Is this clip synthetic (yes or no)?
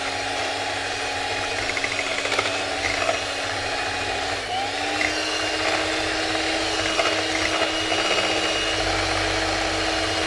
no